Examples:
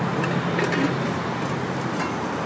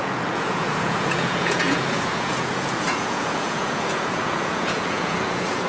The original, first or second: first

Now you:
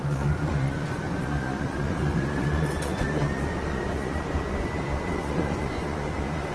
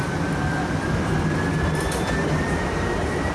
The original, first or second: second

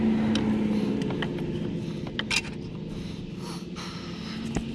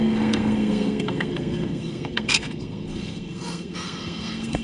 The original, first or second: first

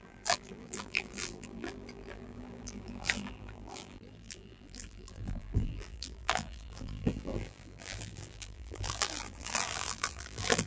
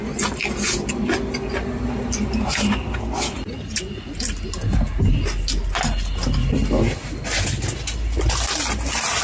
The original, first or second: second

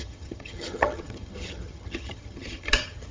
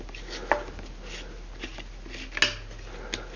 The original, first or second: second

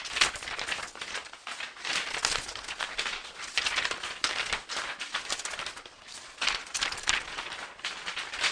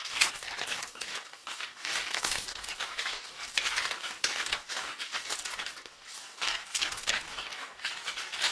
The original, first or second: first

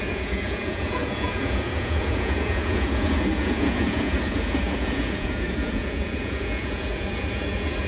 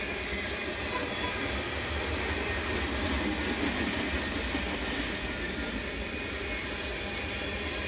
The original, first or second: second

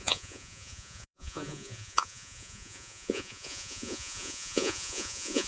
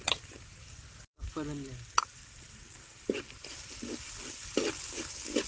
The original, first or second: second